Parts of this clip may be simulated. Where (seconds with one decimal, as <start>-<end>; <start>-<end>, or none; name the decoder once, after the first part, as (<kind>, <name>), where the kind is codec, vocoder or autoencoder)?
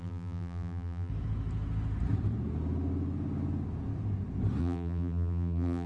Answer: 0.0-1.1 (vocoder, BigVGAN v2); 4.6-5.9